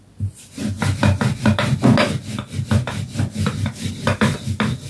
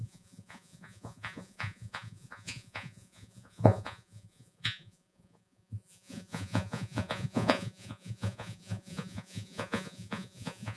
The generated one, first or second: second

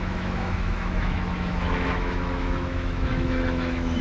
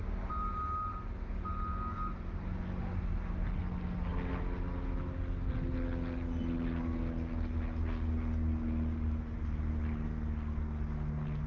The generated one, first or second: first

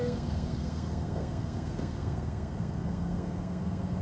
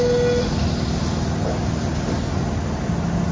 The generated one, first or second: first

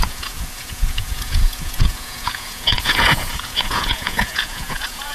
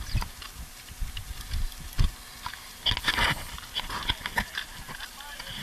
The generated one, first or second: first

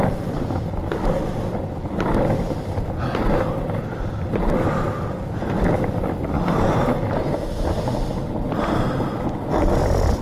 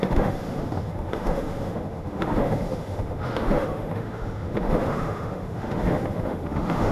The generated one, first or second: second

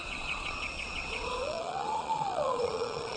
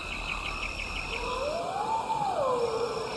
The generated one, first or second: first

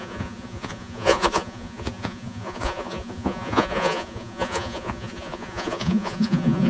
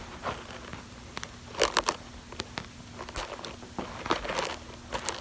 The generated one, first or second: first